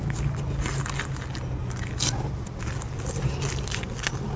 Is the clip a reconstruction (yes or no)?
no